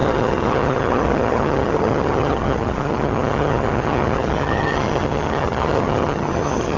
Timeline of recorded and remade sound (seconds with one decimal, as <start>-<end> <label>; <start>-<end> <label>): 0.0-6.8 remade